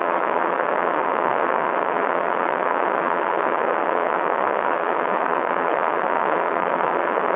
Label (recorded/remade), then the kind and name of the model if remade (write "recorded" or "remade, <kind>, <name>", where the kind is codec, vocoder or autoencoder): remade, vocoder, WaveNeXt